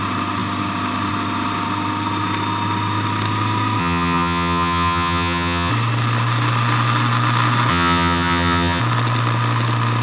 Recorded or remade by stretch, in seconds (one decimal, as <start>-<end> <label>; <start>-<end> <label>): 0.0-3.8 recorded; 3.8-5.7 remade; 5.7-7.7 recorded; 7.7-8.8 remade; 8.8-10.0 recorded